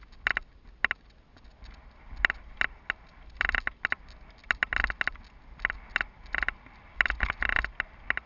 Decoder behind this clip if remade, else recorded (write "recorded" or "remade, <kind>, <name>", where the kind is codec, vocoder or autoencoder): recorded